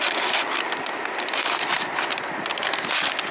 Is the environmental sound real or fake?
real